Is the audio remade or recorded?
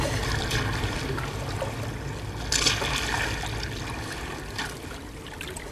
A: recorded